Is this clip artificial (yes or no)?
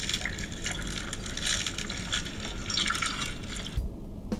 no